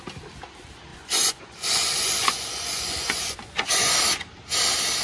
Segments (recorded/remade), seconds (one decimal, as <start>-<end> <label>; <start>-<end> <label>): 0.0-0.9 recorded; 0.9-3.9 remade; 3.9-5.0 recorded